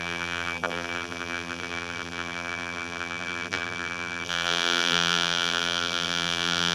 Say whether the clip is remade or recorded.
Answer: remade